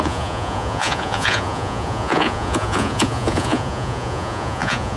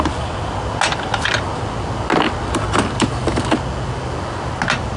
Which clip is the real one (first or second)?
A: second